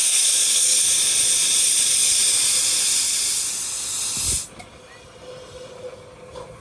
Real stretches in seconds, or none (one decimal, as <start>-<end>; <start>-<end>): 0.8-6.6